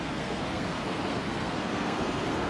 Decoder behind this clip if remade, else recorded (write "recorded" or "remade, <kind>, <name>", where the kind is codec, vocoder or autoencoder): remade, codec, SNAC